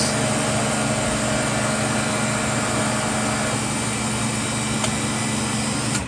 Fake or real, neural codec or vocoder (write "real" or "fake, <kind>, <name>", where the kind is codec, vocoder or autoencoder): real